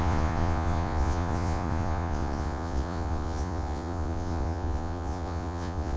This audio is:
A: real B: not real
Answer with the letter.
B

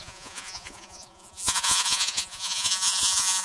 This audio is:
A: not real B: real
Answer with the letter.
A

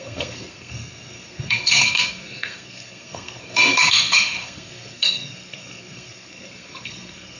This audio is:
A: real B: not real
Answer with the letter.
B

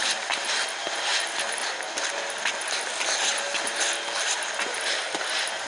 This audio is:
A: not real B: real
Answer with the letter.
B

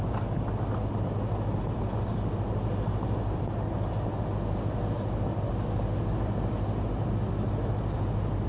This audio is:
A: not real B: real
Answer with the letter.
B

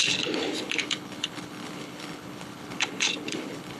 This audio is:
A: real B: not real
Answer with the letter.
B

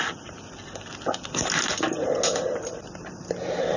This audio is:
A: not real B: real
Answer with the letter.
B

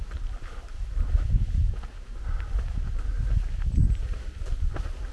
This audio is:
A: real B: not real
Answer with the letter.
A